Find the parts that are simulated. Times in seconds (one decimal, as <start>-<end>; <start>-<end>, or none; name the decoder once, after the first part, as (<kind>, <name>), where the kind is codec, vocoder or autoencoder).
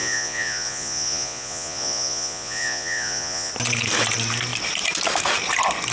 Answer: 0.0-3.5 (vocoder, Vocos)